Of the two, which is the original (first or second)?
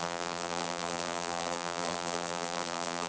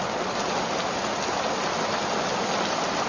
second